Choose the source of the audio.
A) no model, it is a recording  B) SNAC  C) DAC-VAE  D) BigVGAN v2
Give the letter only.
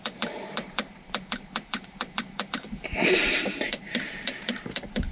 D